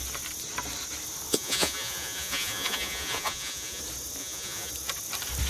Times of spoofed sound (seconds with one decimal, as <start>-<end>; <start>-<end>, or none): 1.3-3.8; 4.2-4.7